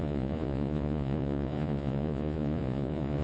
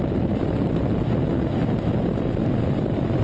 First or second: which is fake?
first